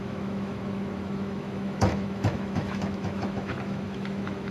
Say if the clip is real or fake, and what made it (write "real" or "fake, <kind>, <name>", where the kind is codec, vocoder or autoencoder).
fake, autoencoder, DAC-VAE